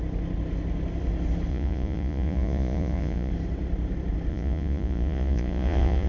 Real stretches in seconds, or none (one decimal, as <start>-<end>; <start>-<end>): 0.0-1.5; 3.3-4.3